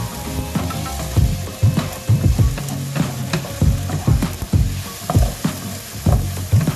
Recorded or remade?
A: recorded